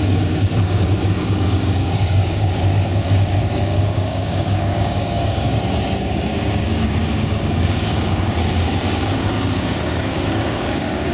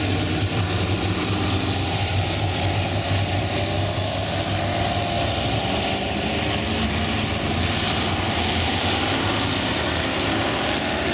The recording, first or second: second